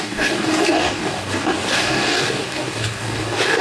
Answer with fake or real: fake